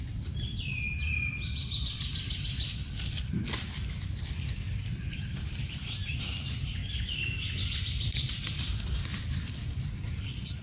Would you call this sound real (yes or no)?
no